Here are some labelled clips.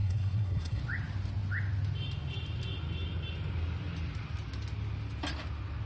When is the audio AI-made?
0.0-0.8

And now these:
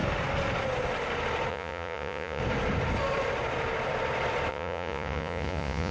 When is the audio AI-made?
1.5-2.4; 4.5-5.9